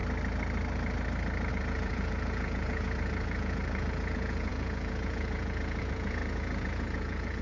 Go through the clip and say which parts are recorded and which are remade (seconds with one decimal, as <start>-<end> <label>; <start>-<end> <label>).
0.0-1.5 recorded; 1.5-7.4 remade